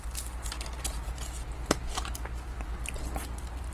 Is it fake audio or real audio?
real